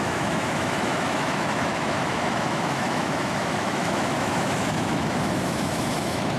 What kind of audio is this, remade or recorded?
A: remade